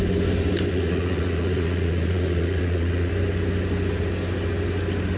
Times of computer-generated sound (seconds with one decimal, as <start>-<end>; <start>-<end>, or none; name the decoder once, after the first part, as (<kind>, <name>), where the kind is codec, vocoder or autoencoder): 0.7-3.1 (vocoder, Vocos)